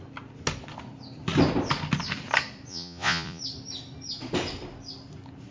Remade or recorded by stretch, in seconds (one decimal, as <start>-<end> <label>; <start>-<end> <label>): 0.0-2.7 recorded; 2.7-3.4 remade; 3.4-5.5 recorded